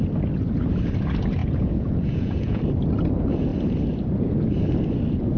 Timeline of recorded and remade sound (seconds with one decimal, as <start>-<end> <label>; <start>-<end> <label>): 0.0-1.4 recorded; 1.4-2.6 remade; 2.6-5.4 recorded